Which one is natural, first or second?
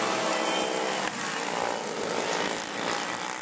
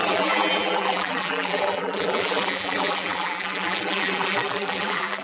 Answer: first